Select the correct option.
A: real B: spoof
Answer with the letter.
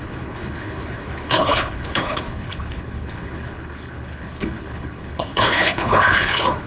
B